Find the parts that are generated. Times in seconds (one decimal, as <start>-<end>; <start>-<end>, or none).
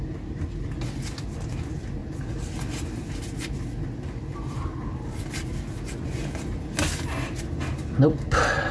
none